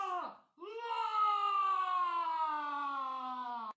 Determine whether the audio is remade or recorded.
recorded